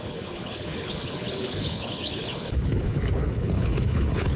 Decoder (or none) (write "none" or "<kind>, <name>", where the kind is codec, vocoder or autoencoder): codec, HILCodec